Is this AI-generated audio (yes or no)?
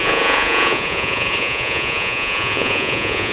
yes